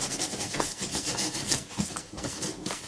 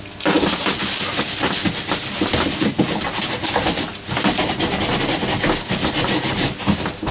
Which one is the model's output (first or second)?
first